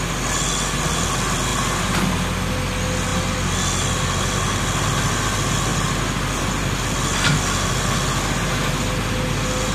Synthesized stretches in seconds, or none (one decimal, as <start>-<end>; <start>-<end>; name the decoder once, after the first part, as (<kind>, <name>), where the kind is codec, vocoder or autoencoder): none